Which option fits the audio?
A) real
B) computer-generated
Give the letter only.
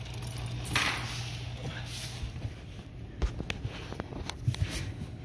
A